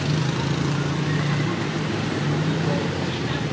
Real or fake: real